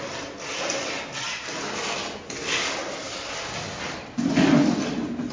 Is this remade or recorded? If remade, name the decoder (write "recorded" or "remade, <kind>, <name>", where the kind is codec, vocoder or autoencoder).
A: recorded